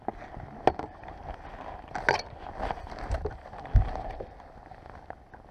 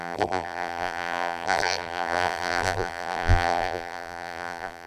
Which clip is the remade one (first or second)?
second